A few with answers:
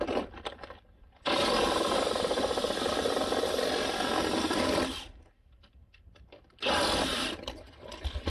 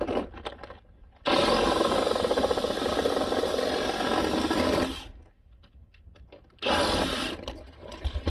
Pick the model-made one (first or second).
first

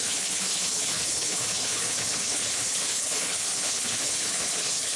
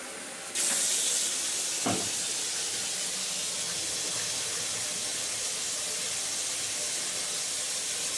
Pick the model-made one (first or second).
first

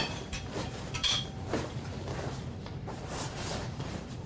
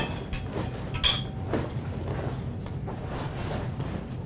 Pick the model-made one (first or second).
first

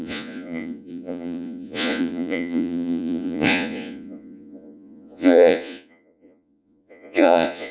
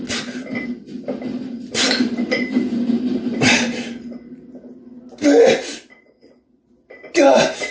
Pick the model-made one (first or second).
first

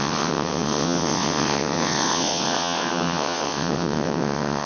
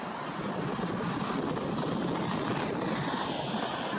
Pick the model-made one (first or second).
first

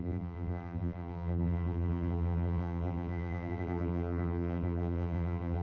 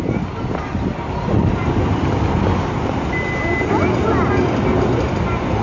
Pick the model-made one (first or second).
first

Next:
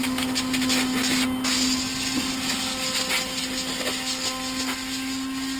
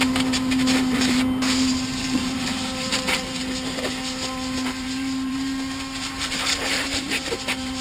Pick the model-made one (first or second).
second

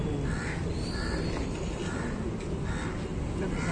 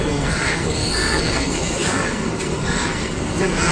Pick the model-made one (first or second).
second